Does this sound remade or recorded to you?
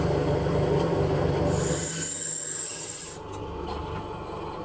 recorded